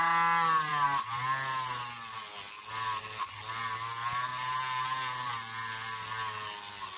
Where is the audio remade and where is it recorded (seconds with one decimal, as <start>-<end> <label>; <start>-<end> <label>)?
0.0-7.0 recorded